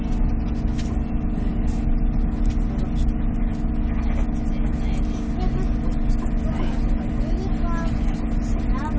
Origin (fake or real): real